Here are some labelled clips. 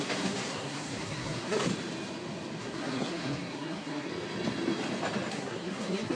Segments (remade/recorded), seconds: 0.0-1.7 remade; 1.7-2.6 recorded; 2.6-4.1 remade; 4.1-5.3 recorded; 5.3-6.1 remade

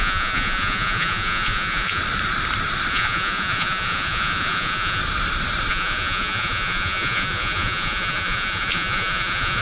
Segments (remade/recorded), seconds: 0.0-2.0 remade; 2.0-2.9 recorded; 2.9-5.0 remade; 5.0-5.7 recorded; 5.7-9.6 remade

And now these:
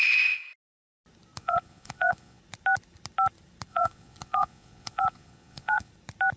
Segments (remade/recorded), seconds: 0.0-1.4 recorded; 1.4-2.4 remade; 2.4-3.7 recorded; 3.7-5.9 remade; 5.9-6.4 recorded

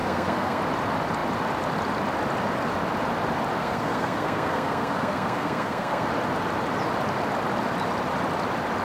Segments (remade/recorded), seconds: 0.0-0.6 remade; 0.6-3.6 recorded; 3.6-6.1 remade; 6.1-8.8 recorded

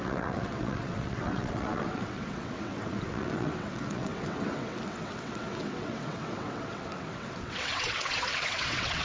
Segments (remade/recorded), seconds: 0.0-9.0 remade

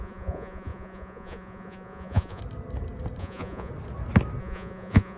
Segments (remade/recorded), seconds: 0.0-2.4 remade; 2.4-3.2 recorded; 3.2-3.7 remade; 3.7-4.4 recorded; 4.4-5.2 remade